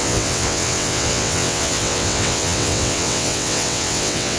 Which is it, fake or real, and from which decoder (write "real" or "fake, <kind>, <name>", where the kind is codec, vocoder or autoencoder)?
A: fake, vocoder, WaveNeXt